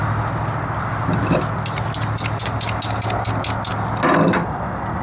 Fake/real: real